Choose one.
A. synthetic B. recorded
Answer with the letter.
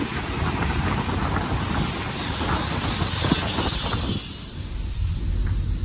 B